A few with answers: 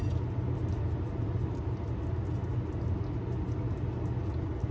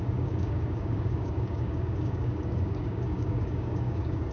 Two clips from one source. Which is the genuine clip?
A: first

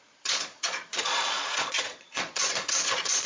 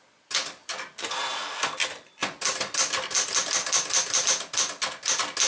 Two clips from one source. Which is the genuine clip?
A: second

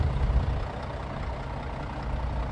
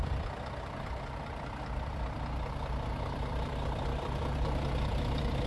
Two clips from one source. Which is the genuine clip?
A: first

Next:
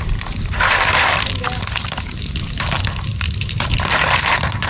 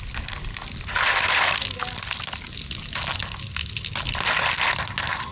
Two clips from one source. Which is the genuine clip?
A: second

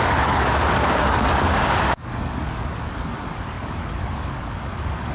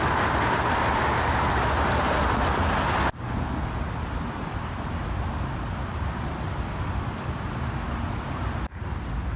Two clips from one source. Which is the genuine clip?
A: second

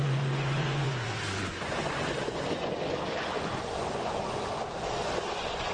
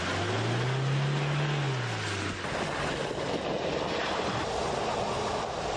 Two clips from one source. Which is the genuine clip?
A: second